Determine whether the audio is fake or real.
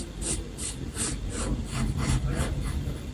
real